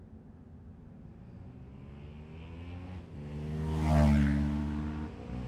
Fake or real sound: real